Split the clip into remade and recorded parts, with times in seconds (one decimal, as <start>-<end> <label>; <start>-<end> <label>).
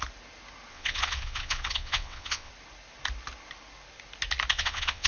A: 0.0-0.7 recorded; 0.7-2.5 remade; 2.5-4.5 recorded; 4.5-5.1 remade